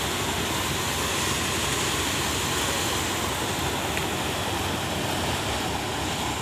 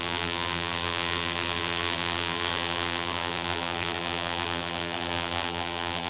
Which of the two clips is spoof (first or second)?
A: second